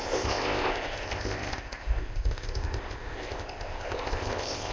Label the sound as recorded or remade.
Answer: remade